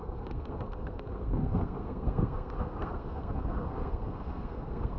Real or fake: fake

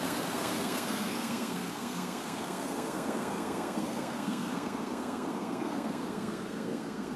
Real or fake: fake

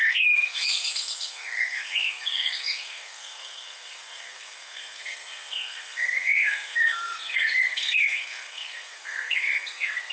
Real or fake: fake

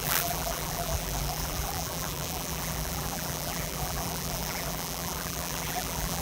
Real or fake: fake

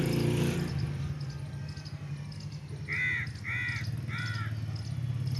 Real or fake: real